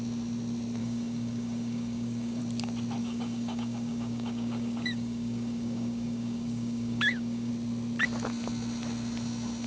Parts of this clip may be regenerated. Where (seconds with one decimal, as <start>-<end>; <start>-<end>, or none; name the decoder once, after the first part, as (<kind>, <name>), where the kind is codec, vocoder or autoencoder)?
0.8-2.4 (codec, DAC); 3.0-7.5